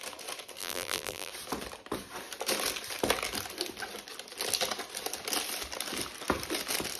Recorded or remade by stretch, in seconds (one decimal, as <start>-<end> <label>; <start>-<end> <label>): 0.0-0.6 recorded; 0.6-1.3 remade; 1.3-7.0 recorded